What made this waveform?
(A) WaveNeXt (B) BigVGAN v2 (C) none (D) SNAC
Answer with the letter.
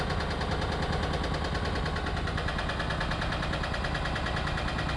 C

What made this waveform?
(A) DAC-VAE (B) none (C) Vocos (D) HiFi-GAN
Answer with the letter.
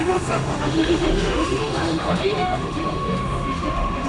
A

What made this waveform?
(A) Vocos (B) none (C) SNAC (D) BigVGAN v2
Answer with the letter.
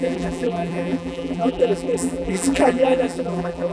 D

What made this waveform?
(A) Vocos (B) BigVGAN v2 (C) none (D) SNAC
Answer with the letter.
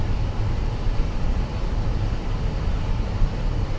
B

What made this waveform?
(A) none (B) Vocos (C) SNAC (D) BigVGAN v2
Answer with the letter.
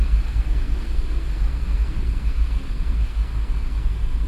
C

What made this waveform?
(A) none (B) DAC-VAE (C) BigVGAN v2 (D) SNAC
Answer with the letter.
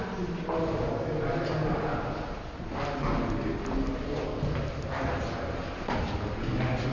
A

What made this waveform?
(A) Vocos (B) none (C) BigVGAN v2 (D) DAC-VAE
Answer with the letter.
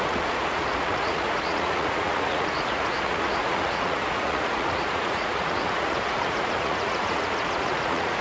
A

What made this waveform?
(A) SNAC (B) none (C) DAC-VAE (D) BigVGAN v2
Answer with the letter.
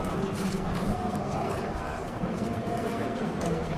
A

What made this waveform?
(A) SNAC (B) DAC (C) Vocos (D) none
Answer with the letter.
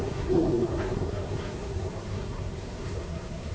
A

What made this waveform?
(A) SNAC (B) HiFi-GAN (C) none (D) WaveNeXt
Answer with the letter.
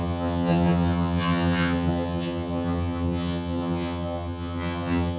B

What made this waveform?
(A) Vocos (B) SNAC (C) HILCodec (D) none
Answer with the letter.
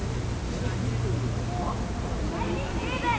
D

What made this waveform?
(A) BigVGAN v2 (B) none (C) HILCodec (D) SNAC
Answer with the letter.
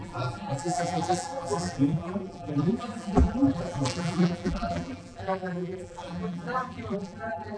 A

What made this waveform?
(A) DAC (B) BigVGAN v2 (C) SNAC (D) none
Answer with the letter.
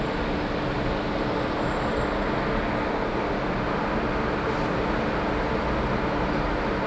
D